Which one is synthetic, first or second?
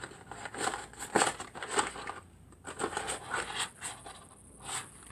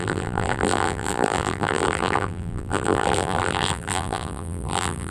second